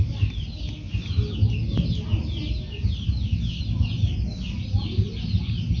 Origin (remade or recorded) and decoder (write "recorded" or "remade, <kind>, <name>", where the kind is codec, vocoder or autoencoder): recorded